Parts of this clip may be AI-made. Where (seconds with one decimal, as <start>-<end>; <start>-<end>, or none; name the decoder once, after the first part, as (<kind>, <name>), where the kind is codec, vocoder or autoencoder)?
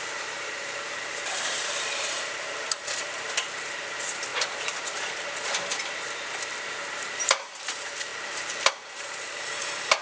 0.0-4.3 (vocoder, BigVGAN v2); 7.0-10.0